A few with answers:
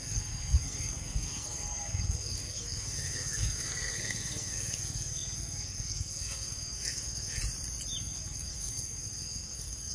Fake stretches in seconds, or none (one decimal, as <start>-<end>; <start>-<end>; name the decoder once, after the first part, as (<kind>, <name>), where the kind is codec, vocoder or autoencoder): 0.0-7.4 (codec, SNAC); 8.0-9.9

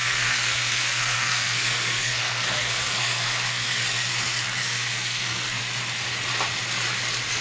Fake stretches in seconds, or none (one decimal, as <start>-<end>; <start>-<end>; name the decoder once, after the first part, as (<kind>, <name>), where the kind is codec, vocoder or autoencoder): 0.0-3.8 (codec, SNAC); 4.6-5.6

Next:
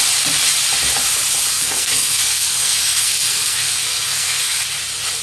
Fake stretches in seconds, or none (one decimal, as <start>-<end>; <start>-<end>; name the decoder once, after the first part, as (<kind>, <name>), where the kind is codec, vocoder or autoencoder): 1.5-4.6 (codec, SNAC)

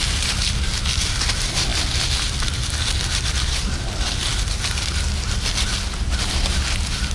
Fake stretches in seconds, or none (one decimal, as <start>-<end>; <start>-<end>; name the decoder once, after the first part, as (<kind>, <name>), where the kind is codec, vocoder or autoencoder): none

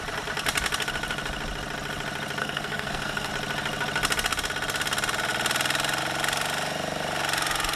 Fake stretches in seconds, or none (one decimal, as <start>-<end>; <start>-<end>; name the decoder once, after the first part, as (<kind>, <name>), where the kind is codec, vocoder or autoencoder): 2.4-3.3 (codec, SNAC)